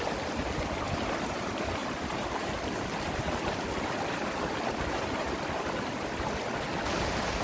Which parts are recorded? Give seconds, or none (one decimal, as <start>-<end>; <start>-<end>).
0.0-7.4